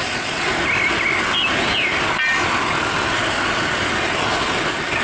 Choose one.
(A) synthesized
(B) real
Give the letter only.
B